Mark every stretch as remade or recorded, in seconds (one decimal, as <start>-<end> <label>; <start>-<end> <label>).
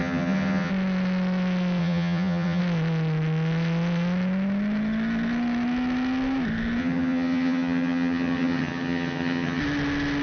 0.0-0.7 remade; 0.7-1.8 recorded; 1.8-2.6 remade; 2.6-6.8 recorded; 6.8-9.6 remade; 9.6-10.2 recorded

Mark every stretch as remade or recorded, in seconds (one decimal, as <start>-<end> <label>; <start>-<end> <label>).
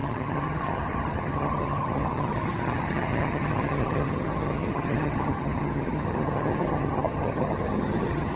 0.0-8.4 remade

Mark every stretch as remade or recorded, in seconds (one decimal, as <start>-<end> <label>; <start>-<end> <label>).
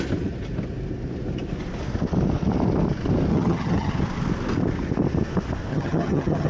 0.0-3.3 recorded; 3.3-3.9 remade; 3.9-5.7 recorded; 5.7-6.5 remade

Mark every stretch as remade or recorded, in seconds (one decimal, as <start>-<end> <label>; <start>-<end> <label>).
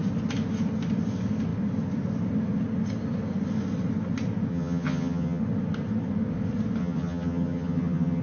0.0-4.5 recorded; 4.5-5.4 remade; 5.4-6.8 recorded; 6.8-8.2 remade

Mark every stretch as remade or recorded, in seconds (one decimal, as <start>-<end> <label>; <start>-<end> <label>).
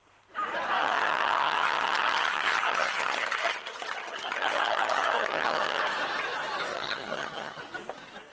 0.0-0.8 recorded; 0.8-5.8 remade; 5.8-6.7 recorded; 6.7-7.6 remade; 7.6-8.3 recorded